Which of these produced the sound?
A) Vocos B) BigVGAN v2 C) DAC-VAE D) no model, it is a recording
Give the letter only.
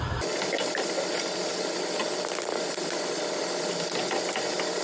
D